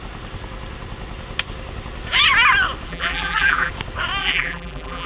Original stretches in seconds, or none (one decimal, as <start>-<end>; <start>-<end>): 0.0-2.9; 3.7-4.2